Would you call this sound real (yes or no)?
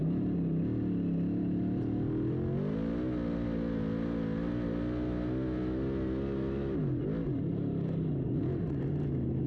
yes